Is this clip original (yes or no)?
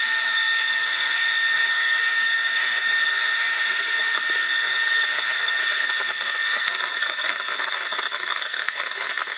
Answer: no